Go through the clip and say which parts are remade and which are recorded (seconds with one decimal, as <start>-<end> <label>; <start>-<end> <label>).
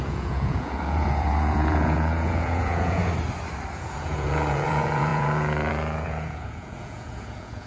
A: 0.0-3.0 remade; 3.0-3.8 recorded; 3.8-7.7 remade